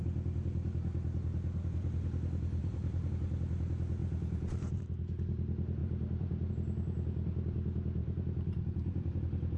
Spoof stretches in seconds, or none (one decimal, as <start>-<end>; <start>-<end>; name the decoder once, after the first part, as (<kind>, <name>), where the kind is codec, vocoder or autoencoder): 2.6-3.1 (vocoder, BigVGAN v2); 4.0-4.8; 5.8-6.5; 8.0-9.2